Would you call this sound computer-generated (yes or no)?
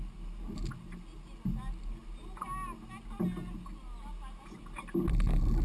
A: no